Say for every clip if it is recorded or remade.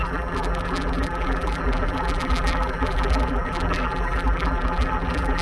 remade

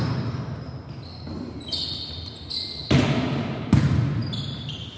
recorded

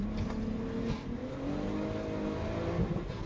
recorded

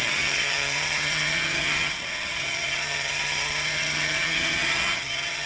remade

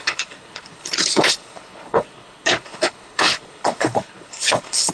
remade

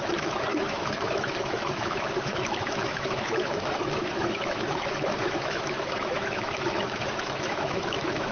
remade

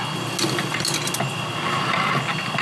recorded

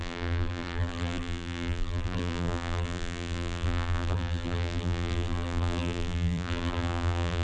remade